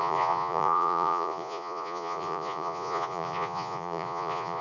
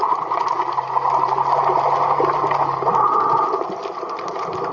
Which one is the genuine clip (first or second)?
second